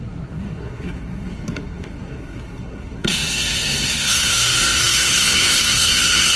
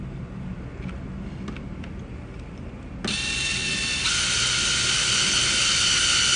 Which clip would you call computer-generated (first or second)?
first